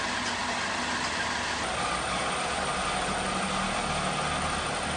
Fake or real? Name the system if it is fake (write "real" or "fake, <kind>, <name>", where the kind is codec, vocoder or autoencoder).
real